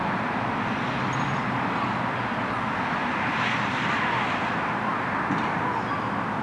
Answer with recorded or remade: recorded